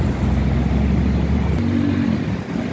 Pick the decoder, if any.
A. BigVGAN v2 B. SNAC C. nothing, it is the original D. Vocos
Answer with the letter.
C